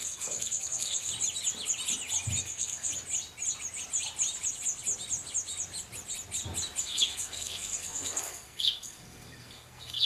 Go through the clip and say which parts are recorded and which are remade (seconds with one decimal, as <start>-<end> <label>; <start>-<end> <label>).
0.0-1.1 remade; 1.1-2.4 recorded; 2.4-2.9 remade; 2.9-6.8 recorded; 6.8-10.0 remade